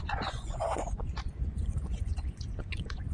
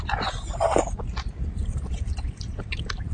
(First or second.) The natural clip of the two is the second